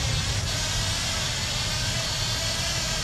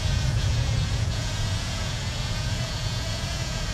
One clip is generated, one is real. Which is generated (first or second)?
second